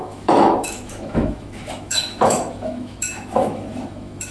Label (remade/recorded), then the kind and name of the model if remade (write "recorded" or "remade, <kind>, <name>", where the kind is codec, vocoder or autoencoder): remade, autoencoder, DAC-VAE